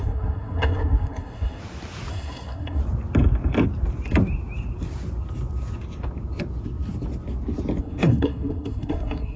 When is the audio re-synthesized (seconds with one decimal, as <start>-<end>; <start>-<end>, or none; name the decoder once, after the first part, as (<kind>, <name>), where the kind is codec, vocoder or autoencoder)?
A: 0.0-1.6 (codec, SNAC); 2.1-2.8; 7.8-9.4